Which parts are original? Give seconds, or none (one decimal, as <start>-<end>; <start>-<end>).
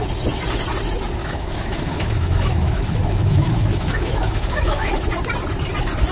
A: 0.0-1.2; 4.9-6.1